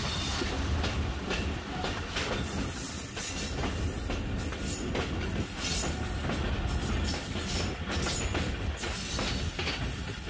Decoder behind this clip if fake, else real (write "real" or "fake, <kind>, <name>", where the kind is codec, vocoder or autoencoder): real